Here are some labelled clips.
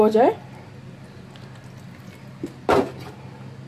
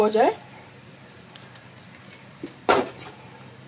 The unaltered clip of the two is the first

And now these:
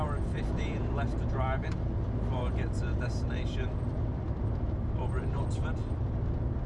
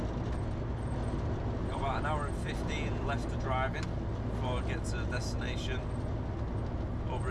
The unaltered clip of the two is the second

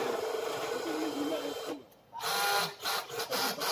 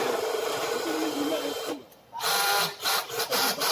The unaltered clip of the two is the first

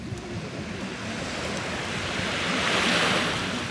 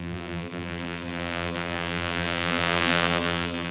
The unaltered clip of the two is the first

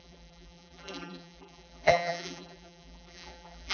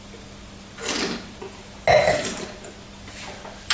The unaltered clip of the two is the second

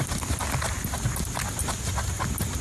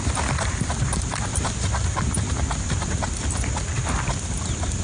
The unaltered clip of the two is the first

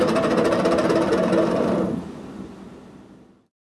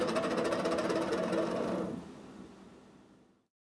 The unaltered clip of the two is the second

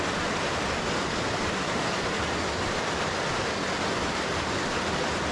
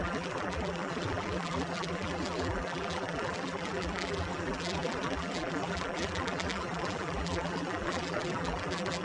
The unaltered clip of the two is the first